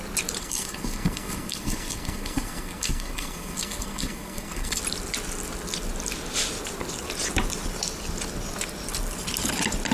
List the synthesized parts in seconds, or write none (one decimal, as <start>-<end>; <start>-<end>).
0.4-4.8